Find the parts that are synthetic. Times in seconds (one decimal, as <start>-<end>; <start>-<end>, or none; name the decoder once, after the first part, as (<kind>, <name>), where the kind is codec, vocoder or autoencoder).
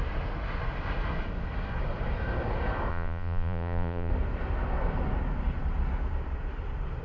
2.9-4.1 (vocoder, Vocos)